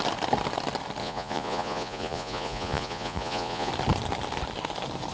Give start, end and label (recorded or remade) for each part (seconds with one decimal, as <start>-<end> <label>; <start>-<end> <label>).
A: 0.0-1.0 recorded; 1.0-3.7 remade; 3.7-5.1 recorded

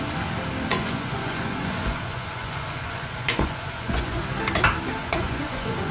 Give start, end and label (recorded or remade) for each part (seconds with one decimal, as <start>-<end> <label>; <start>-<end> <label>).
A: 0.0-0.7 recorded; 0.7-4.2 remade; 4.2-5.0 recorded; 5.0-5.9 remade